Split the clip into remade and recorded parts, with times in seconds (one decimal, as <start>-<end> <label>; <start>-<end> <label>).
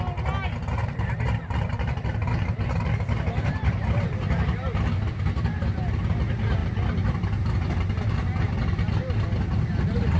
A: 0.0-0.8 recorded; 0.8-4.1 remade; 4.1-6.6 recorded; 6.6-8.8 remade; 8.8-10.2 recorded